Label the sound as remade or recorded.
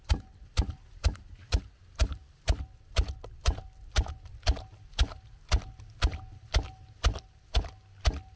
recorded